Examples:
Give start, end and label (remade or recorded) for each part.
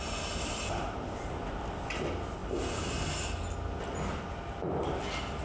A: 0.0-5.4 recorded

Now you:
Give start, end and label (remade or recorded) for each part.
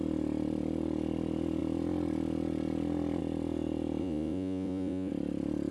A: 0.0-4.0 recorded; 4.0-5.1 remade; 5.1-5.7 recorded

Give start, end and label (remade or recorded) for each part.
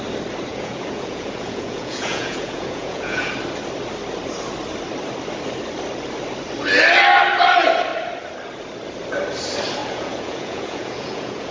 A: 0.0-0.5 recorded; 0.5-3.3 remade; 3.3-9.8 recorded; 9.8-11.5 remade